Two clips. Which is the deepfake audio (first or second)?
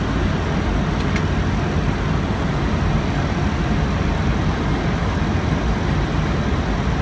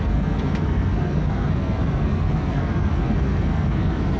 second